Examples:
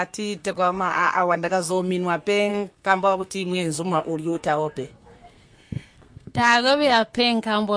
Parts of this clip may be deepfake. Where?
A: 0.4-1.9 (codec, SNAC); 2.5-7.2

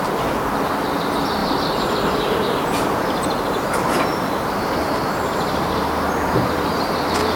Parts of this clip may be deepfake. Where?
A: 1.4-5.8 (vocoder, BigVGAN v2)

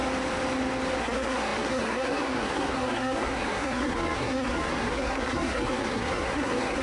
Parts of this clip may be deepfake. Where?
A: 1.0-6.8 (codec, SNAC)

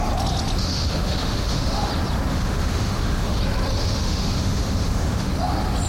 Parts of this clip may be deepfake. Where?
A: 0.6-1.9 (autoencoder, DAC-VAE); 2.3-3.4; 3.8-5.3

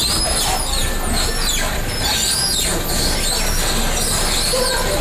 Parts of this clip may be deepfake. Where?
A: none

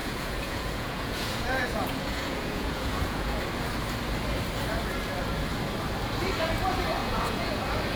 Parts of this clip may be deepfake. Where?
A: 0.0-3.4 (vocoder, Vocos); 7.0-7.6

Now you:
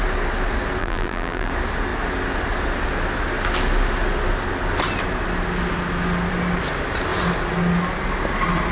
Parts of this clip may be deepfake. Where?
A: 0.8-1.5 (vocoder, BigVGAN v2)